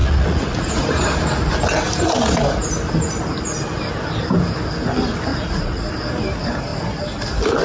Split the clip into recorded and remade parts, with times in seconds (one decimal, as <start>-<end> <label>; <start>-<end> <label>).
0.0-0.8 remade; 0.8-5.3 recorded; 5.3-5.9 remade; 5.9-7.6 recorded

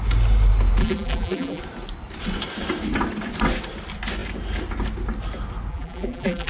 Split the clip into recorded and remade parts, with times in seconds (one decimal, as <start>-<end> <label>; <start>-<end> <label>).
0.0-0.8 recorded; 0.8-1.6 remade; 1.6-5.7 recorded; 5.7-6.5 remade

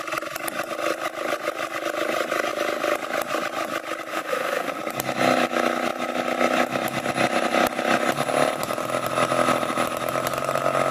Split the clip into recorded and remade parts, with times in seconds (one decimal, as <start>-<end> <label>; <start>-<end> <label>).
0.0-4.1 recorded; 4.1-4.8 remade; 4.8-10.9 recorded

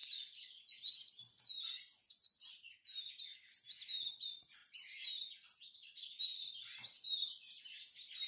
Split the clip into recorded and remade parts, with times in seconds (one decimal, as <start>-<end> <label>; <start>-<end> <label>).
0.0-8.3 recorded

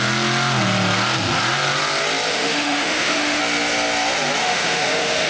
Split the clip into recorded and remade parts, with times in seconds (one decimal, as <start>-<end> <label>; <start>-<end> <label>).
0.0-2.3 recorded; 2.3-3.4 remade; 3.4-4.4 recorded; 4.4-5.3 remade

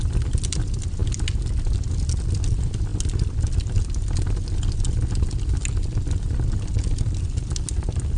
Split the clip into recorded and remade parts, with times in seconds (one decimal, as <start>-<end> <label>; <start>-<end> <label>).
0.0-8.2 recorded

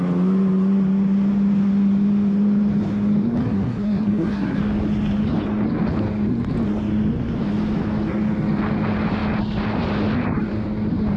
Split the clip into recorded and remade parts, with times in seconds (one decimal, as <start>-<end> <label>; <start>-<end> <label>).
0.0-3.4 recorded; 3.4-4.6 remade; 4.6-11.2 recorded